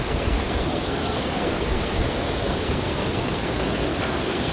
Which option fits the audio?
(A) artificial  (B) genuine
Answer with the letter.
A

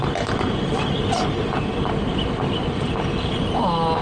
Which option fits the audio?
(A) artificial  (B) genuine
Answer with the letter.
B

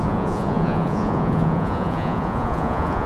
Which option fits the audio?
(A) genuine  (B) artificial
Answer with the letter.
B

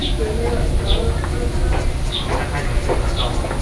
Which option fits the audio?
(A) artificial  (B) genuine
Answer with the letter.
B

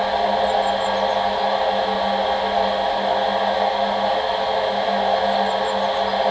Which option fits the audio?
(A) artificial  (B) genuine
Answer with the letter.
B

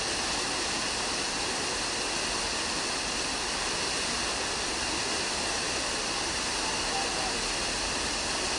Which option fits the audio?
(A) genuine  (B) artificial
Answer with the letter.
A